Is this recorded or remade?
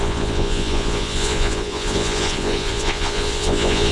remade